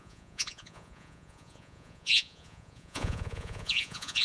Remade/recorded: remade